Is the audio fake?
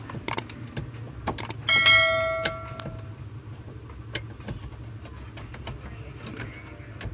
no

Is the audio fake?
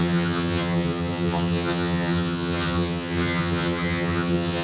yes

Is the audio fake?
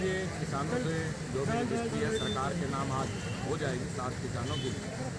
no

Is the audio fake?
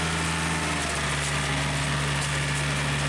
no